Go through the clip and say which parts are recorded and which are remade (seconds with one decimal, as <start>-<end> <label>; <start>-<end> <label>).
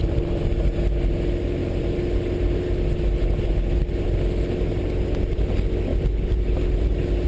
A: 0.0-7.3 recorded